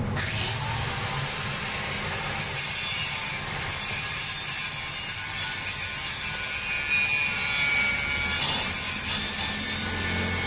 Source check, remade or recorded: recorded